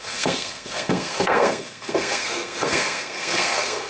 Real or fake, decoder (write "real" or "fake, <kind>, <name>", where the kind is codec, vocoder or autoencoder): fake, codec, SNAC